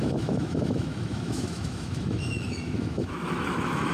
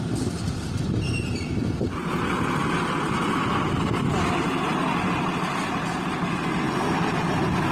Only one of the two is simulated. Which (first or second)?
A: first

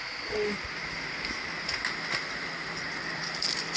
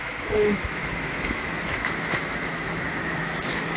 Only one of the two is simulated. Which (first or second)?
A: second